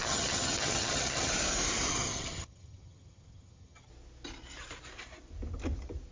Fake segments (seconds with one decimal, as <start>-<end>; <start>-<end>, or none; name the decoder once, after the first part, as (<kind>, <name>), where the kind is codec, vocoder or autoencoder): 0.0-1.3 (vocoder, HiFi-GAN); 1.9-3.9